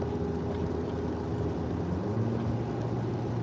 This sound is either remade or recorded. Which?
recorded